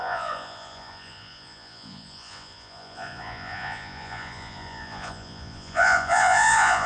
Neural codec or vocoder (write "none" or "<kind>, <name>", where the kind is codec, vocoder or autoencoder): vocoder, Vocos